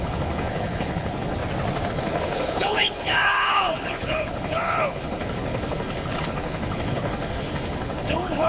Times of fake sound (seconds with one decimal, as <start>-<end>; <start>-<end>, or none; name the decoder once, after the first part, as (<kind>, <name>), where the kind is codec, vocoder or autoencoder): 0.0-1.4 (codec, HILCodec); 1.9-8.5